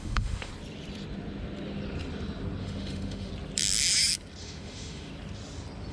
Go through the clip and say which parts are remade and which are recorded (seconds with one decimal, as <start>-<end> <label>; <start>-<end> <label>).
0.0-0.5 remade; 0.5-2.6 recorded; 2.6-3.3 remade; 3.3-4.4 recorded; 4.4-5.1 remade; 5.1-5.9 recorded